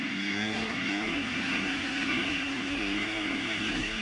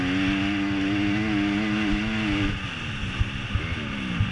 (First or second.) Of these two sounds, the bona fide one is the second